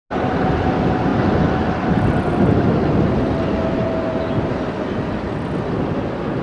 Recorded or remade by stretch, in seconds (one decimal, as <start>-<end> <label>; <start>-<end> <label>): 0.0-3.8 recorded; 3.8-4.5 remade; 4.5-6.4 recorded